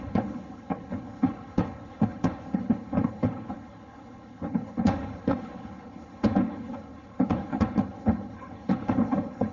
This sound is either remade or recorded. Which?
remade